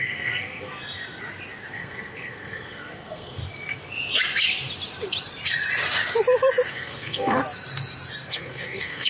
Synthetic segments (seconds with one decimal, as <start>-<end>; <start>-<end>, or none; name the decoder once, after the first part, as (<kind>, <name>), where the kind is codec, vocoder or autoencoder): 0.0-0.7 (codec, SNAC); 1.7-3.4; 6.7-7.4; 8.3-9.1